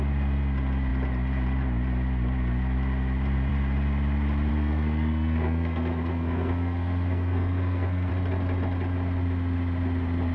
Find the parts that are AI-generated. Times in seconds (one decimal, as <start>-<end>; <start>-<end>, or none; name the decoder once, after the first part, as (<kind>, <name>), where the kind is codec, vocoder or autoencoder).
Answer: 4.5-8.1 (codec, SNAC)